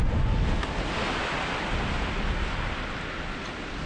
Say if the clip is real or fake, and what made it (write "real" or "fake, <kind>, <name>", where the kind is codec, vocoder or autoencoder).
real